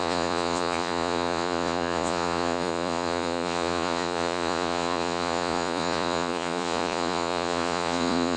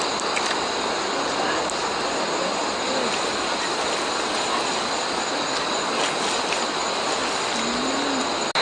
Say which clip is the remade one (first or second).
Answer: first